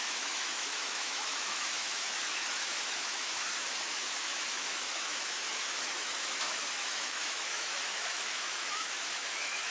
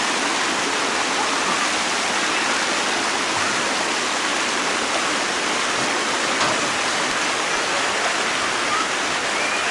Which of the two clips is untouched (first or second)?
second